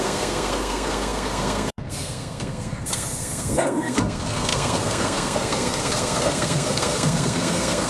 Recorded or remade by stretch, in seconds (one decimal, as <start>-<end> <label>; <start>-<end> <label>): 0.0-7.9 remade